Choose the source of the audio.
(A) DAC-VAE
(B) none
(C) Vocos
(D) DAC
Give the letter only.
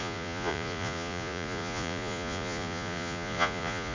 C